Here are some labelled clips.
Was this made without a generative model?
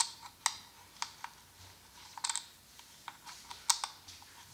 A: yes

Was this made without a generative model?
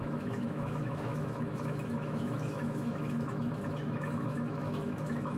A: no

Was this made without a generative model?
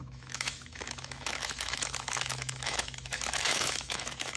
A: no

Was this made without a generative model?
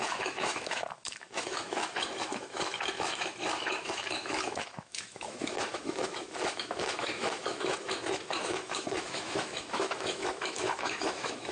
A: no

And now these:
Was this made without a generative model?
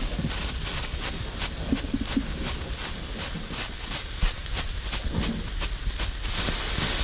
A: yes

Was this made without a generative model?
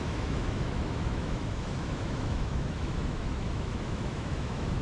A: no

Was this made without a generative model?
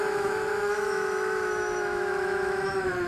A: no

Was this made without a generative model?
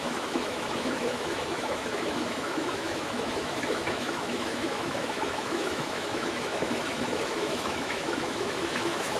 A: no